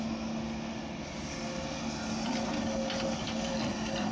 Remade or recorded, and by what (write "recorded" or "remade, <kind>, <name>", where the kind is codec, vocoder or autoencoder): recorded